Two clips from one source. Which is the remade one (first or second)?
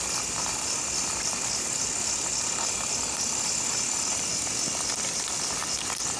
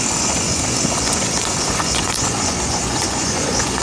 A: second